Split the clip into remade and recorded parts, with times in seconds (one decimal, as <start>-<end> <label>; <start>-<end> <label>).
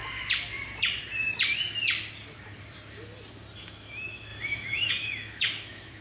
0.0-3.6 recorded; 3.6-6.0 remade